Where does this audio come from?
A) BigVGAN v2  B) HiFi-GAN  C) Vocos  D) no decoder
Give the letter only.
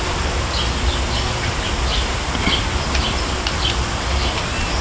D